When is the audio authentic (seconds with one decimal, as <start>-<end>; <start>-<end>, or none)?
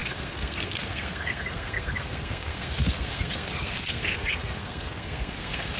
none